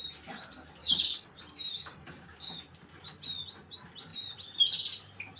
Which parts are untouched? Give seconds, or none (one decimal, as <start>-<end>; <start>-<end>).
0.0-0.8; 1.4-1.8; 2.6-5.4